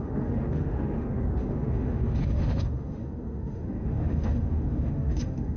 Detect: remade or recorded remade